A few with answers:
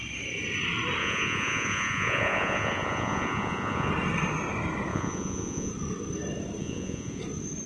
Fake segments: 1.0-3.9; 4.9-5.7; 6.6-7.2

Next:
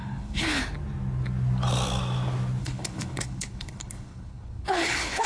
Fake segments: 0.0-0.6; 2.6-5.3

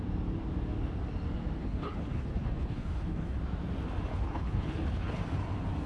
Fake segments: 1.6-3.4; 4.1-5.2

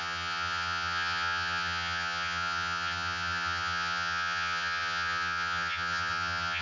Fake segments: 0.0-6.6

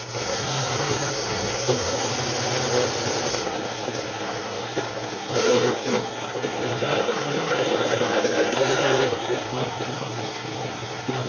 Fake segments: 0.0-2.1; 3.3-11.3

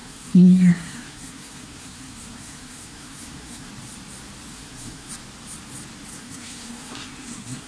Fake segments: 0.0-3.7; 4.5-5.1; 6.1-7.7

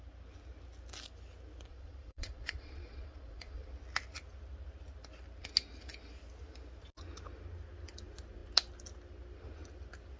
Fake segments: 1.7-3.6